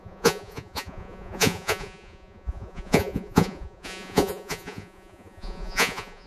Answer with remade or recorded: remade